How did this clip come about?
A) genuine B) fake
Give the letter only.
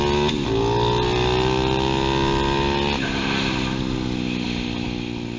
A